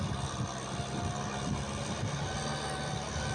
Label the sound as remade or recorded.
recorded